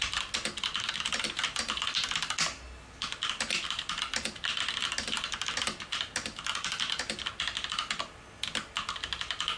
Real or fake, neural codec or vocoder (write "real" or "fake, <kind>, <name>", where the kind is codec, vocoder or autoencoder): real